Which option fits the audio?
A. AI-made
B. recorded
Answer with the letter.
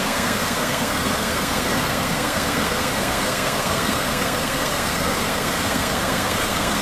A